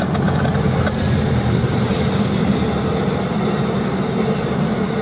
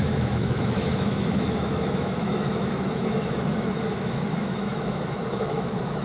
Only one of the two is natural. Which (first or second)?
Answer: first